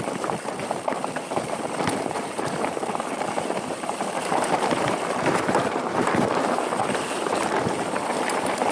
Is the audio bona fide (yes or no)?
no